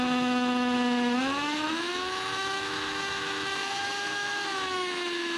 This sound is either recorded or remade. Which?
remade